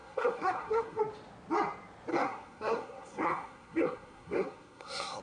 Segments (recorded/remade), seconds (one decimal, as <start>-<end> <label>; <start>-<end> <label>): 0.0-1.0 remade; 1.0-2.1 recorded; 2.1-5.2 remade